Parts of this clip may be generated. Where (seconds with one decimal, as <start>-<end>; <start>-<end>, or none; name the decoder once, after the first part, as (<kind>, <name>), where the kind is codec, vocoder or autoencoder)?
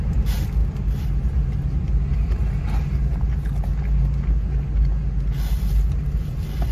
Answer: none